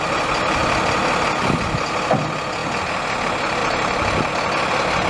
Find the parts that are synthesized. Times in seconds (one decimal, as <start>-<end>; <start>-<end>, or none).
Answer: 0.6-1.9; 3.6-4.3